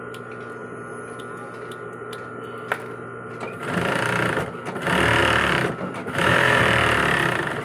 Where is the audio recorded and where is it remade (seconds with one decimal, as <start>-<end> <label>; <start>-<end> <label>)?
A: 0.0-6.0 recorded; 6.0-6.6 remade; 6.6-7.6 recorded